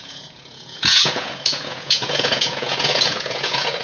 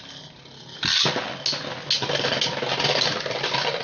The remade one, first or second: first